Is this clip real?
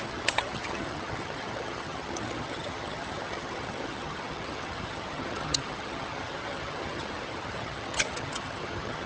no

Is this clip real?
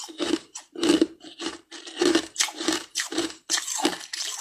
no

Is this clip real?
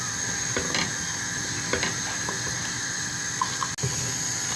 yes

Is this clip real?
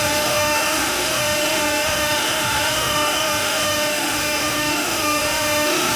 no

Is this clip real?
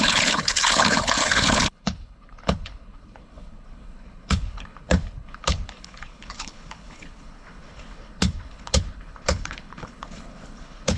no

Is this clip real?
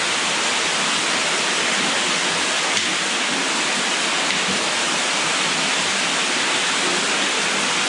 yes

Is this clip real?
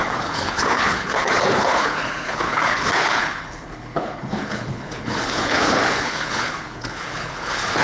no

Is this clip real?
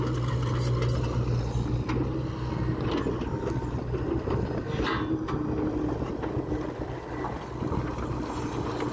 yes